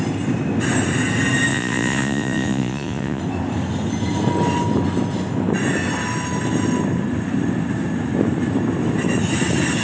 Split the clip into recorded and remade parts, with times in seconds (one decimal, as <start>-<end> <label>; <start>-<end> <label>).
0.0-1.5 recorded; 1.5-3.2 remade; 3.2-9.8 recorded